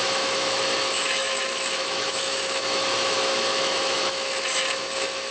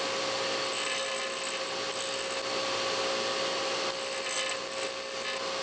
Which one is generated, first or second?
first